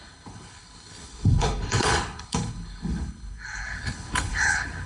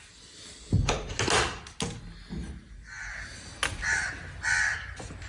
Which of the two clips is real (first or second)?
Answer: second